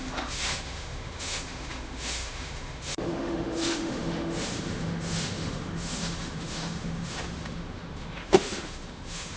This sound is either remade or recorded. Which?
remade